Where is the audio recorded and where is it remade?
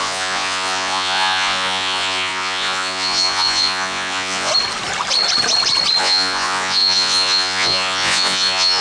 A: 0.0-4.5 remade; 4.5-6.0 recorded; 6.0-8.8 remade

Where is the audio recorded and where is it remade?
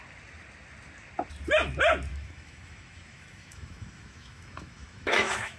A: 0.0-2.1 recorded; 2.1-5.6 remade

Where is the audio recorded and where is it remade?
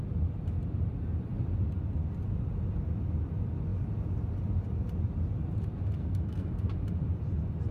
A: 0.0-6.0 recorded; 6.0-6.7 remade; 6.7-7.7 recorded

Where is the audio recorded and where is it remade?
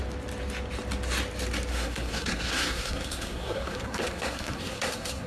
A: 0.0-1.7 recorded; 1.7-5.3 remade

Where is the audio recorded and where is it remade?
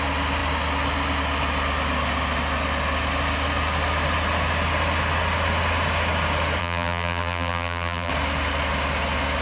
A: 0.0-6.6 recorded; 6.6-8.1 remade; 8.1-9.4 recorded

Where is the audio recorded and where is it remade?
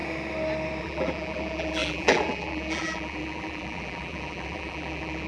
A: 0.0-0.8 recorded; 0.8-5.3 remade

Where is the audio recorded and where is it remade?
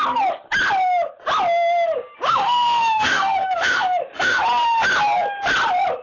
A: 0.0-2.2 recorded; 2.2-4.4 remade; 4.4-6.0 recorded